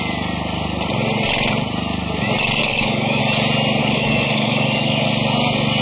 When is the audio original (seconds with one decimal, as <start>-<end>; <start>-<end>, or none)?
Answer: 0.0-2.6; 3.2-3.8; 5.1-5.8